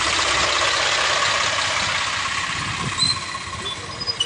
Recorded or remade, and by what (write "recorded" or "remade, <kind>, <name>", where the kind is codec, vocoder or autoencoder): recorded